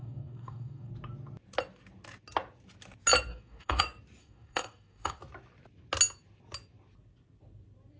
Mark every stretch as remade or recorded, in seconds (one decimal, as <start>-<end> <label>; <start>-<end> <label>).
0.0-0.9 remade; 0.9-3.3 recorded; 3.3-3.8 remade; 3.8-4.2 recorded; 4.2-5.2 remade; 5.2-8.0 recorded